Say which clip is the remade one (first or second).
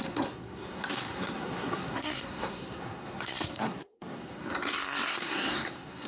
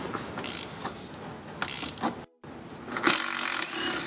first